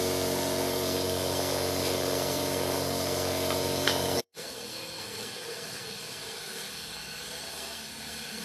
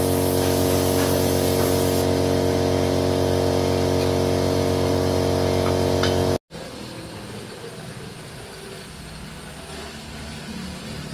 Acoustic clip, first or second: second